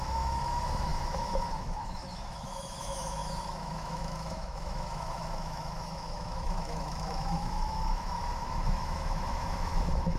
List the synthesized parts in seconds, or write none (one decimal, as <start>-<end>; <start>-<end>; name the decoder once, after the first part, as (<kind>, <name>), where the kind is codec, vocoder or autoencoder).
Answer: 0.0-10.2 (autoencoder, DAC-VAE)